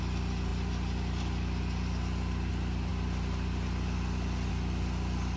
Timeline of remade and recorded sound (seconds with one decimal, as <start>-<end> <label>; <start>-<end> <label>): 0.0-5.4 recorded